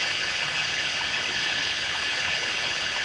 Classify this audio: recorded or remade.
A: remade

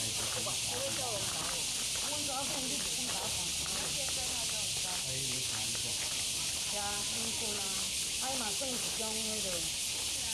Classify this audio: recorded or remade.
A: recorded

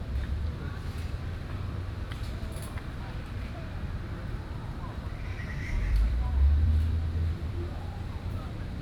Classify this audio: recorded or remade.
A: remade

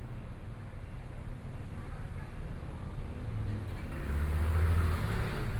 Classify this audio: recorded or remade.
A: recorded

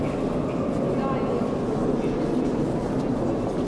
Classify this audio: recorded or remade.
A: recorded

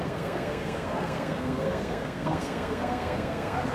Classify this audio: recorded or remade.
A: remade